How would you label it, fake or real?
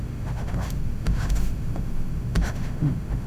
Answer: fake